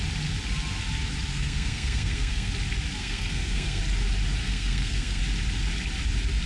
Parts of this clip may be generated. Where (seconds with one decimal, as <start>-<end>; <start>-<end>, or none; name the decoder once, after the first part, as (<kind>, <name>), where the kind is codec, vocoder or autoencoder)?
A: 1.3-2.5 (codec, SNAC); 3.0-3.8; 4.4-5.2